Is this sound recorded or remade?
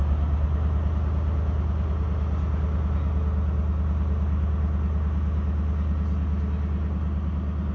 recorded